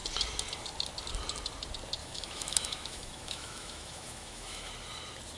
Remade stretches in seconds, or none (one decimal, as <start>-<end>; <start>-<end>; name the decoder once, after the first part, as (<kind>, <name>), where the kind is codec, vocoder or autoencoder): 2.0-4.7 (autoencoder, DAC-VAE)